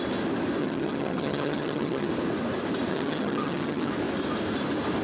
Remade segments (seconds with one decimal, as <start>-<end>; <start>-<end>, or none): 0.6-2.1; 2.9-3.9